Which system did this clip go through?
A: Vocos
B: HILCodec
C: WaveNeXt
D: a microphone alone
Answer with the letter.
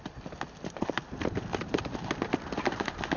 D